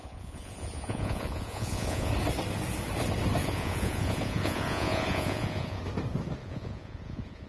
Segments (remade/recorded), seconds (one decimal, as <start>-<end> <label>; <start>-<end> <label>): 0.0-2.1 remade; 2.1-3.4 recorded; 3.4-5.8 remade; 5.8-6.4 recorded; 6.4-7.5 remade

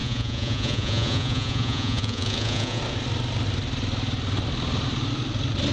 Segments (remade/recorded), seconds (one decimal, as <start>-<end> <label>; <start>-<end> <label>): 0.0-2.8 remade; 2.8-5.7 recorded

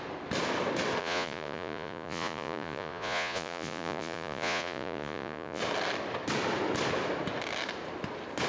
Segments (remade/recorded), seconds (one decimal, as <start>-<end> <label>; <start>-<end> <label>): 0.0-1.0 recorded; 1.0-5.6 remade; 5.6-8.5 recorded

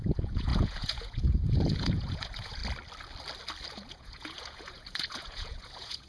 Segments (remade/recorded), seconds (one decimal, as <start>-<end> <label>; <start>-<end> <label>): 0.0-2.6 remade; 2.6-3.7 recorded; 3.7-6.1 remade

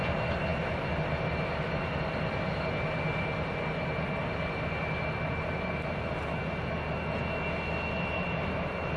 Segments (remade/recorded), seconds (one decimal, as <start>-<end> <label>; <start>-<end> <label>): 0.0-9.0 recorded

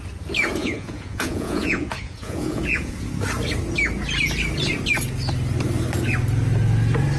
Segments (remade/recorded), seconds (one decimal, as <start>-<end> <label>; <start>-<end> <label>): 0.0-0.6 recorded; 0.6-2.9 remade; 2.9-7.2 recorded